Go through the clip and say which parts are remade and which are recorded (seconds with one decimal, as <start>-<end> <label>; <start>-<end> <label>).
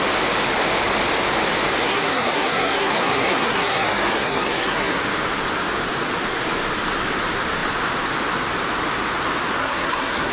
0.0-1.8 recorded; 1.8-5.0 remade; 5.0-9.6 recorded; 9.6-10.3 remade